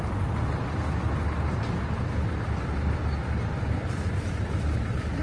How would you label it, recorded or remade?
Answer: recorded